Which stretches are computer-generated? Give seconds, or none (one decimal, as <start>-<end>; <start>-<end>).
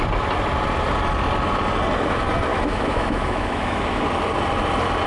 2.5-4.0